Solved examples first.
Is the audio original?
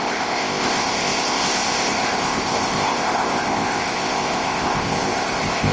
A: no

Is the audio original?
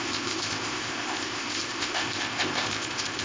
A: no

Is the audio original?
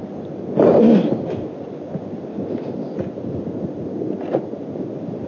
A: yes